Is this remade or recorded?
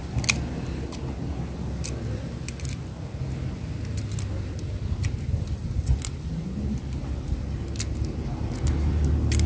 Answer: recorded